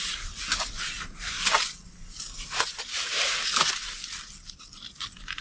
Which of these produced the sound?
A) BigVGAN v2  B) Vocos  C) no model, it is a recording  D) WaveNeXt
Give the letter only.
A